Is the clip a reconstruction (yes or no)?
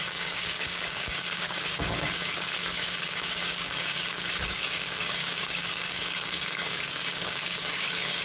yes